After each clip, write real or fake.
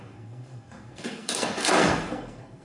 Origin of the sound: fake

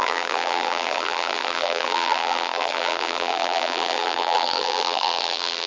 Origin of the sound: fake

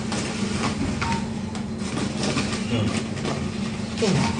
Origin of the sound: real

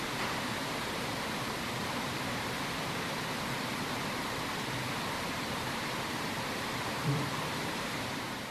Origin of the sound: fake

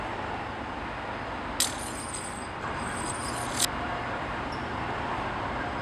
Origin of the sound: real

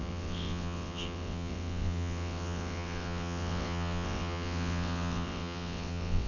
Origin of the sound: fake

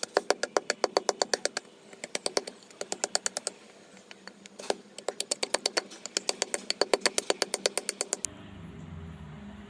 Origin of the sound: real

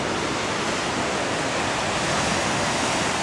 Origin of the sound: real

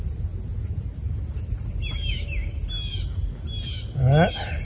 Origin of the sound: real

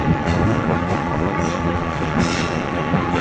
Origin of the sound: fake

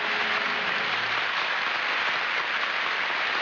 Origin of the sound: real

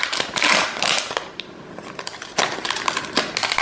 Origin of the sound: real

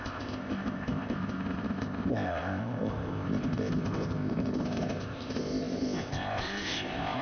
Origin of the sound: fake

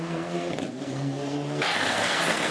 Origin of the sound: fake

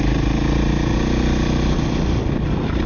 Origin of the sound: real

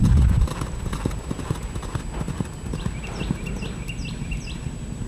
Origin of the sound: real